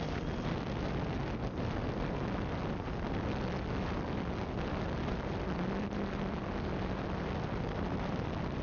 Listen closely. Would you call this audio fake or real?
real